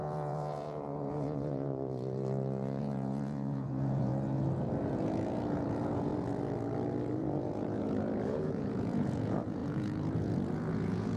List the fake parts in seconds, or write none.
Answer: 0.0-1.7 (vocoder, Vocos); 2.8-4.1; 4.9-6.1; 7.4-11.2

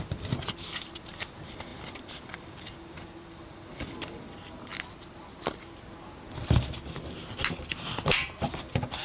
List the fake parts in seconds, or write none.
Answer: 0.0-4.7 (vocoder, BigVGAN v2); 8.5-9.0

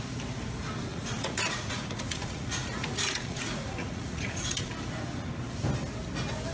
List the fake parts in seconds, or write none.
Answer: 0.9-4.7 (vocoder, Vocos)

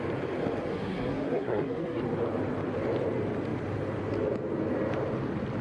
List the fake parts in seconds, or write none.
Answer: 0.7-2.0 (codec, SNAC)

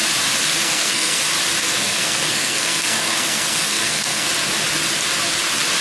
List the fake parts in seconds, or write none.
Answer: 0.6-1.2 (codec, SNAC); 1.6-4.3